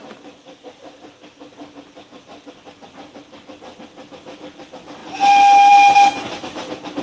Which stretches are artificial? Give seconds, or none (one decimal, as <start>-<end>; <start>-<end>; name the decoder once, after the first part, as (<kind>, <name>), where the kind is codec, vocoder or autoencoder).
none